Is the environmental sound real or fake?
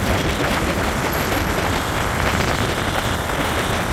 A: real